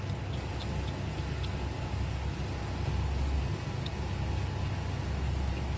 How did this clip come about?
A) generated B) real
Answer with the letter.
B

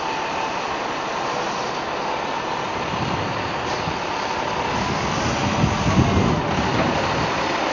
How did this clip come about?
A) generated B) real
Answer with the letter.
B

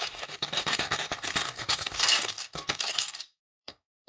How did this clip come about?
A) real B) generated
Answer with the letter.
B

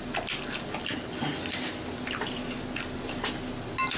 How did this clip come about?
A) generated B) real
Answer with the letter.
B